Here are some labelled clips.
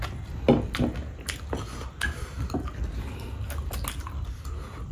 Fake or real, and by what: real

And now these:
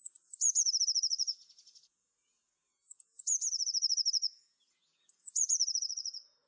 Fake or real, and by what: fake, vocoder, Vocos